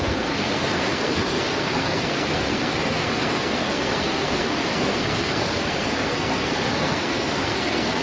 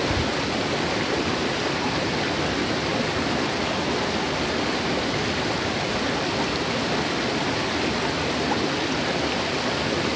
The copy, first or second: first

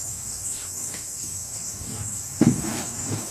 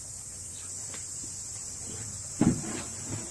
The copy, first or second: first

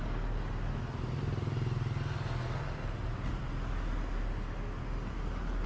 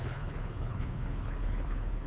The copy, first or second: second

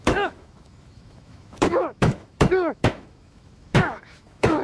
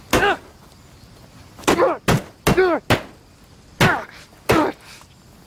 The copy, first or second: first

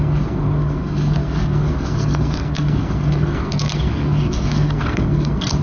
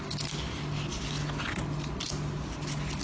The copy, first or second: first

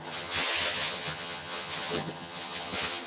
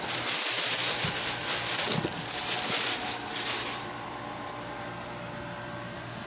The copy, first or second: first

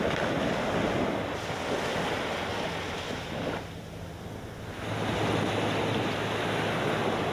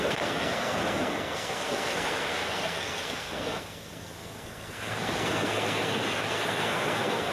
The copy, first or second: second